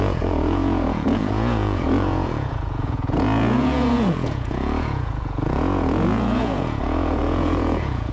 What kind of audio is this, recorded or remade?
remade